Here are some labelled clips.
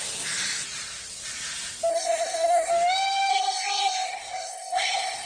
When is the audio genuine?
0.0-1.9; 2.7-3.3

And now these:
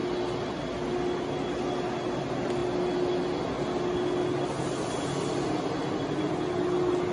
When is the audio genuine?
0.0-7.1

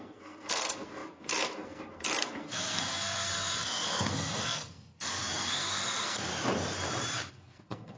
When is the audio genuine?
6.3-7.3

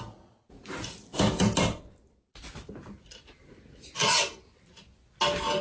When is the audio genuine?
0.0-5.6